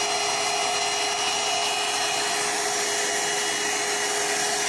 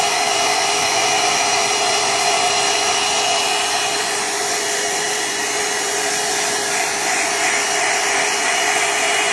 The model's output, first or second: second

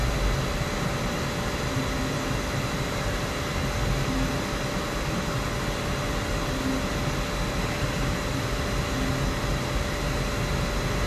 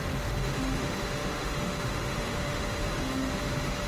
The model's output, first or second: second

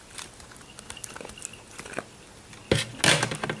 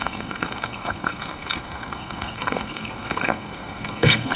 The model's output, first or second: second